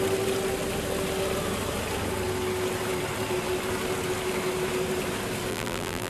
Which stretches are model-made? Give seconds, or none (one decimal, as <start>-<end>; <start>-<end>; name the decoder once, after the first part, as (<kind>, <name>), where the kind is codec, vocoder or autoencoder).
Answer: 5.5-6.1 (vocoder, BigVGAN v2)

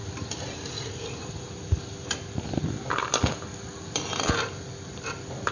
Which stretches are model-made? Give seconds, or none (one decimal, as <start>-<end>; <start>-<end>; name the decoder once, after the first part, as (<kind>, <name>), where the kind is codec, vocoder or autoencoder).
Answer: none

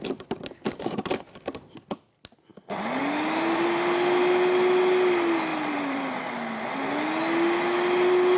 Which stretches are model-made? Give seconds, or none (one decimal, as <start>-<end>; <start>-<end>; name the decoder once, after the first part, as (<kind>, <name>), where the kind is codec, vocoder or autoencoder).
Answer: 5.5-6.3 (vocoder, BigVGAN v2)

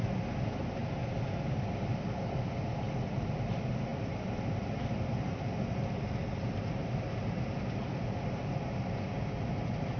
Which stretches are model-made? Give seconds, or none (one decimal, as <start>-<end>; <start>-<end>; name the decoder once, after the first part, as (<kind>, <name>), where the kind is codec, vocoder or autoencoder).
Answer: 0.0-10.0 (vocoder, BigVGAN v2)

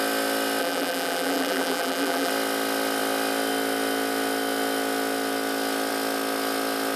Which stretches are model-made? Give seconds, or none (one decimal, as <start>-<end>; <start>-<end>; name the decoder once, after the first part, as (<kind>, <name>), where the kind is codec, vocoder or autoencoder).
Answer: 0.6-2.3 (vocoder, BigVGAN v2)

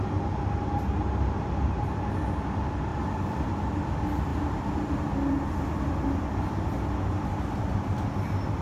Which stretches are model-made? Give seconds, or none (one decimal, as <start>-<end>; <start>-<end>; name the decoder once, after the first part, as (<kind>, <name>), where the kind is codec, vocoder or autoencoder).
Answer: 2.9-3.5 (vocoder, BigVGAN v2); 4.3-5.3